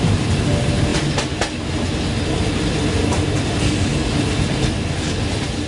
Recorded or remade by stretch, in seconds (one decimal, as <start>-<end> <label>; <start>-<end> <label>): 0.0-0.9 remade; 0.9-2.7 recorded; 2.7-3.9 remade; 3.9-5.7 recorded